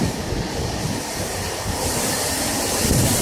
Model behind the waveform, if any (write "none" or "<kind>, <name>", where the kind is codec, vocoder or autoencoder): none